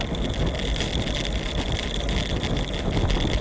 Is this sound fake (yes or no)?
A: no